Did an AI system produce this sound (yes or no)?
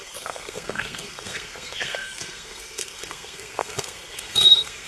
yes